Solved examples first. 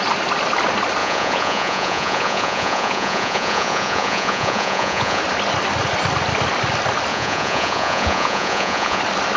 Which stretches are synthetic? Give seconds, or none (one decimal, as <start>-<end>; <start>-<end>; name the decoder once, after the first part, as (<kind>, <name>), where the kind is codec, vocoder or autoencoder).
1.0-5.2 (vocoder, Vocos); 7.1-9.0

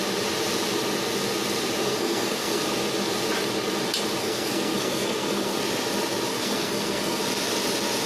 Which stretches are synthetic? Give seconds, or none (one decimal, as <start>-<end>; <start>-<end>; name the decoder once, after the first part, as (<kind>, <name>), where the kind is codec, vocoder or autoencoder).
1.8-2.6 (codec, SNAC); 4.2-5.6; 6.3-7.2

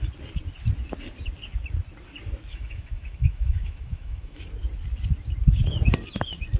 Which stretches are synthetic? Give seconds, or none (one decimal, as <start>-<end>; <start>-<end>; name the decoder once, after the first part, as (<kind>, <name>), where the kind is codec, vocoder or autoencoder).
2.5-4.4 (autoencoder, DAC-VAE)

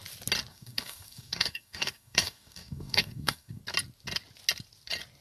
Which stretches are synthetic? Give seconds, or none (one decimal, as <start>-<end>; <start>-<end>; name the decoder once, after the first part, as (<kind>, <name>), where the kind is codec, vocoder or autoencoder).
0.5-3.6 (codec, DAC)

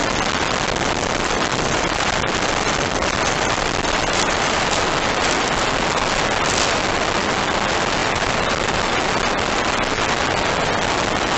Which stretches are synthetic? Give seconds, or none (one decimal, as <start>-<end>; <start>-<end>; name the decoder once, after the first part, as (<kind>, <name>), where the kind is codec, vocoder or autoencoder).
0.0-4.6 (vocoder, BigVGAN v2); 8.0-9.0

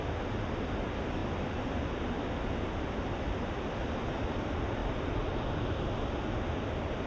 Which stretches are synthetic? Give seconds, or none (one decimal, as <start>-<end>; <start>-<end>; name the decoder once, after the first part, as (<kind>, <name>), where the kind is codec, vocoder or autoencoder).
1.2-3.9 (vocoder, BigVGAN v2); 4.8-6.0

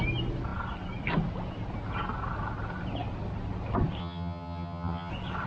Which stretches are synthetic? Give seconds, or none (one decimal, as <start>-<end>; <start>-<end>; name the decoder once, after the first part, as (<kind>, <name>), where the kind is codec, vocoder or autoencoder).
4.0-5.1 (vocoder, HiFi-GAN)

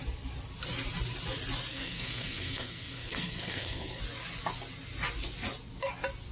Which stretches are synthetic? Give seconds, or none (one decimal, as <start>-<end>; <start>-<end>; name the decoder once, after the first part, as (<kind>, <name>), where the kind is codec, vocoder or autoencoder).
1.7-4.0 (codec, SNAC)